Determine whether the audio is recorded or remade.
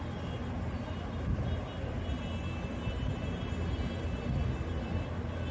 recorded